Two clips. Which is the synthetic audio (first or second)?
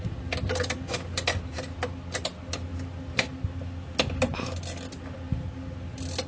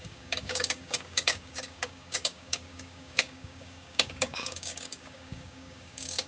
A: second